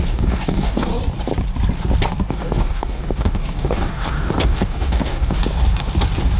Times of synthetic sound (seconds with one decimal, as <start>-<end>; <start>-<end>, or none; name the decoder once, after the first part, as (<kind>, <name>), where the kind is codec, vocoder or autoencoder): 0.0-0.9 (codec, DAC); 2.3-5.4